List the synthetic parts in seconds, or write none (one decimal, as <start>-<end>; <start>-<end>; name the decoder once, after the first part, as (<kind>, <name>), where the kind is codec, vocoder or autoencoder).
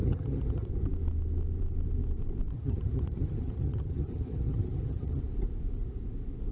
0.0-0.7 (vocoder, HiFi-GAN); 2.5-5.2